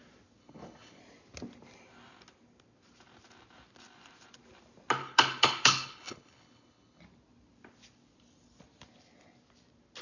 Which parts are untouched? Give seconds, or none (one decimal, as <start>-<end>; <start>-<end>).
0.0-0.4; 1.0-5.0; 7.0-10.0